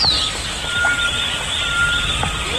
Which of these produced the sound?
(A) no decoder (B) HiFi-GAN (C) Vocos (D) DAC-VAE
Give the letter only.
A